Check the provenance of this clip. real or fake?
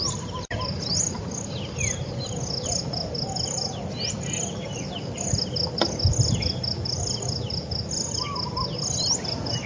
real